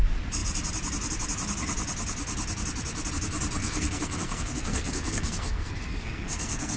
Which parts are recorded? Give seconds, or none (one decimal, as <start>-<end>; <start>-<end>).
0.0-3.6

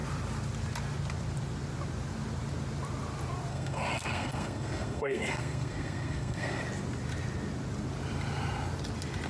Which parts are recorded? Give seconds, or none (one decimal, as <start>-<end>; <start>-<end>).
0.0-3.5; 6.6-9.3

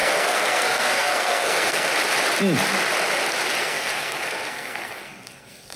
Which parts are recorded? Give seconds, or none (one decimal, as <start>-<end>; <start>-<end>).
1.9-3.6

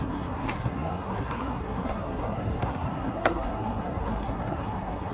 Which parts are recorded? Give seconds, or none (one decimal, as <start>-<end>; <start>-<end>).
none

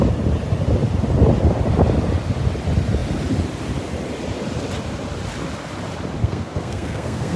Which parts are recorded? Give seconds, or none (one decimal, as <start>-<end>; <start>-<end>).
0.0-6.2